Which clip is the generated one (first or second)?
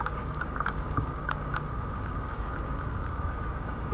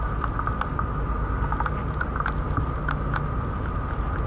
first